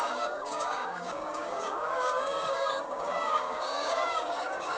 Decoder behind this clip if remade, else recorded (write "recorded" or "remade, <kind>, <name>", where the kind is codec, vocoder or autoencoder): remade, codec, DAC